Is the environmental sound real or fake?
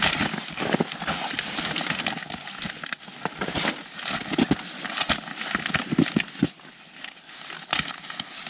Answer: real